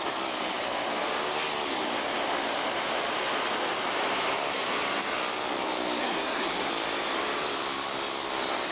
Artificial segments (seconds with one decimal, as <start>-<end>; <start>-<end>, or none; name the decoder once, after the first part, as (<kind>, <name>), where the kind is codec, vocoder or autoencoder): 6.0-6.7 (codec, SNAC)